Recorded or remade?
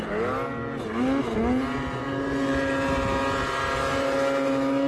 recorded